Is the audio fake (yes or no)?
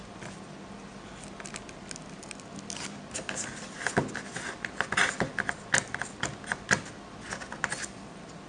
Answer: no